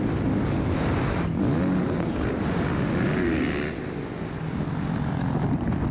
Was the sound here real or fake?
real